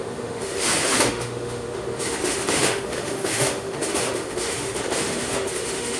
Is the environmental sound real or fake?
fake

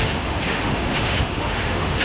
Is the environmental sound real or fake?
fake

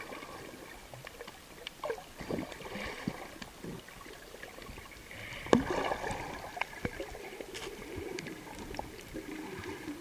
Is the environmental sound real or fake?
real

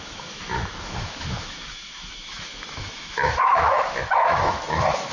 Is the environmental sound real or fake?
fake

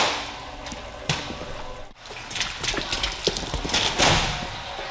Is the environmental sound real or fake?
real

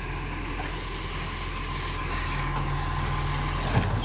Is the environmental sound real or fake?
real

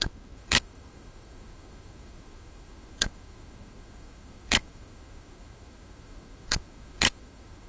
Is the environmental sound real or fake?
fake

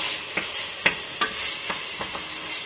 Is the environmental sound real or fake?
real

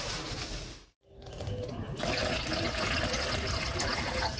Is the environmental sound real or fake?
real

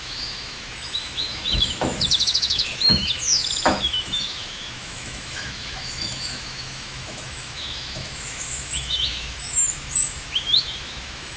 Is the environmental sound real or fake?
fake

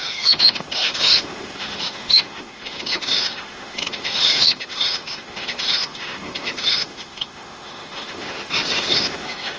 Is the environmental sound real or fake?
fake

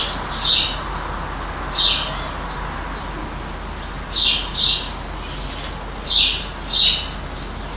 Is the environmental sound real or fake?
real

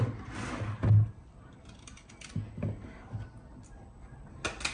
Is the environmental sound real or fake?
real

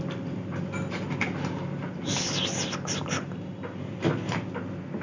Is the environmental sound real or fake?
real